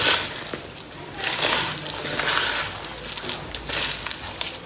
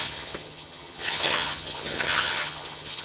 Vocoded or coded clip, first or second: second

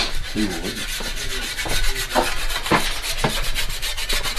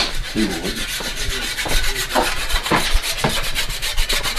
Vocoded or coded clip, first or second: second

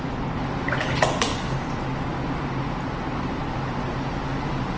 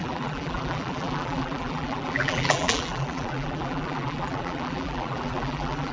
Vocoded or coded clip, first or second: second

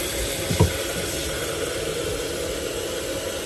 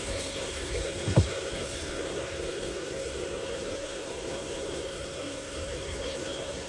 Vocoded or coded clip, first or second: second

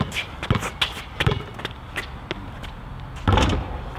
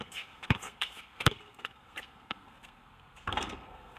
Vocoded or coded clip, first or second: second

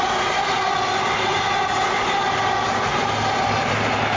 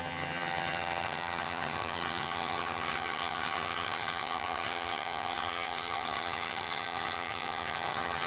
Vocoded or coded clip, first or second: second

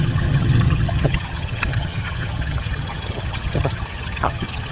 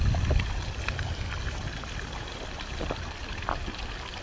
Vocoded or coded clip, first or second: first